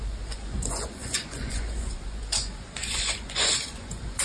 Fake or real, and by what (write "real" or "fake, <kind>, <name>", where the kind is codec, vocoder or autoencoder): fake, vocoder, Vocos